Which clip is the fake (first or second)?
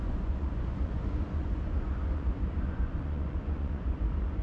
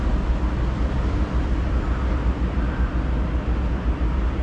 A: first